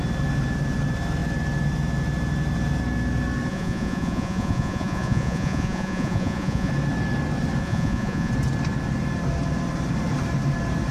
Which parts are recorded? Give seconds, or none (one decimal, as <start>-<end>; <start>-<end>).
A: 0.0-3.5; 6.7-7.6; 8.3-10.9

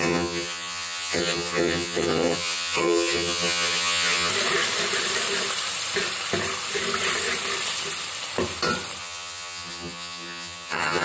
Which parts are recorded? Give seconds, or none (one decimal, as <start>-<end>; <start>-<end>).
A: 4.3-9.0

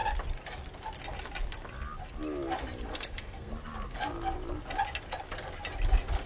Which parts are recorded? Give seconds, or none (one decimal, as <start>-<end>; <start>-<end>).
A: 0.0-2.9; 3.5-6.3

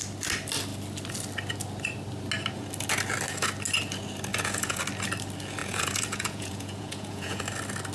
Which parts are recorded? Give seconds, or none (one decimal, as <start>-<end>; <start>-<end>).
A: 0.0-4.3; 4.8-5.6; 7.4-7.9

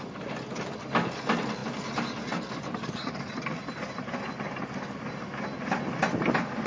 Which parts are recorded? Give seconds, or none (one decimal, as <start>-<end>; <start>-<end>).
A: 0.0-6.7